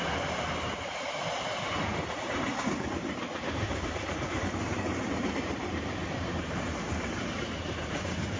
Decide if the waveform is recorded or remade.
remade